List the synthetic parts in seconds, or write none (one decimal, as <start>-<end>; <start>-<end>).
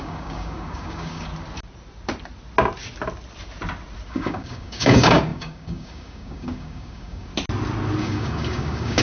0.0-1.3; 4.1-7.3; 8.0-9.0